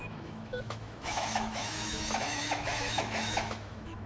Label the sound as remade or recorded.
remade